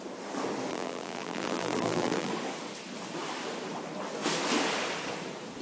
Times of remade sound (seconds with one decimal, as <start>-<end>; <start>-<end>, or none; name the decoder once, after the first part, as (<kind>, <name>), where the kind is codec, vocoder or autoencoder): 0.7-2.3 (vocoder, BigVGAN v2)